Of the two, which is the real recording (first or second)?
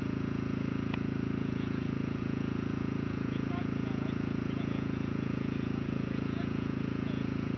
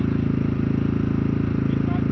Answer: second